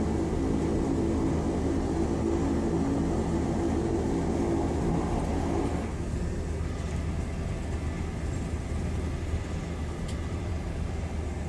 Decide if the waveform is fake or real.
real